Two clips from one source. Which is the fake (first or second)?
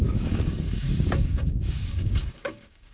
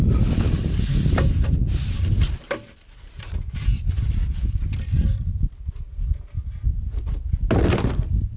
first